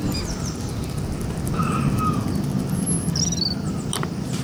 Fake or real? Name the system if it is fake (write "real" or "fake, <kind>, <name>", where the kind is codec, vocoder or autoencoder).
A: real